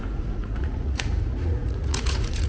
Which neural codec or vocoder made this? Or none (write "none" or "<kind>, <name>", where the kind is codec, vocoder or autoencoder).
vocoder, Vocos